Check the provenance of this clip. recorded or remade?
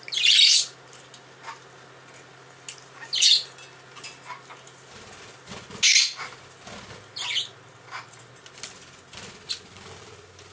recorded